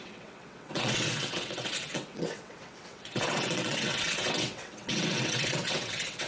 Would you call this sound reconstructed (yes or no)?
yes